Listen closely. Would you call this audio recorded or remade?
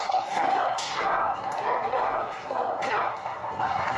remade